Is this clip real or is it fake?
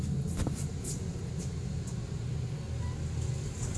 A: real